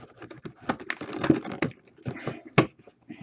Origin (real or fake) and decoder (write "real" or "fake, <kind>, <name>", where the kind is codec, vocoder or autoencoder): real